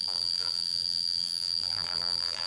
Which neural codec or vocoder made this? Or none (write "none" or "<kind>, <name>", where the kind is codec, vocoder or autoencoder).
vocoder, BigVGAN v2